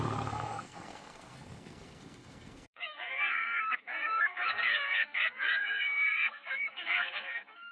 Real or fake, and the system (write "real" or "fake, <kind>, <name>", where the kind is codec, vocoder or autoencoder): fake, codec, SNAC